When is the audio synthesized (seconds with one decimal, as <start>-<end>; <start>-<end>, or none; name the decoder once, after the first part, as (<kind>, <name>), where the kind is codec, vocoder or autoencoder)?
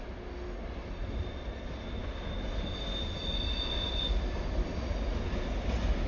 none